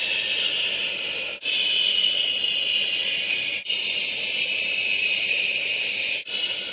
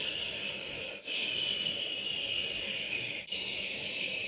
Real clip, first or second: first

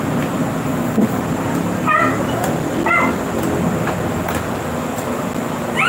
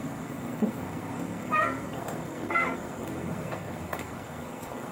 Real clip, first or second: first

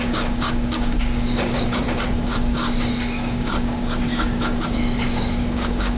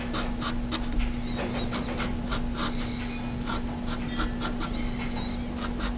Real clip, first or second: second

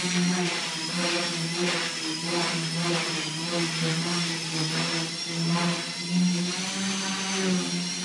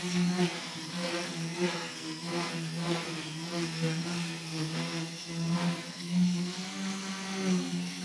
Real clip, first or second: first